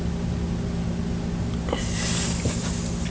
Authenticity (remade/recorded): recorded